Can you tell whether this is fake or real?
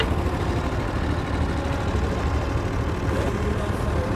real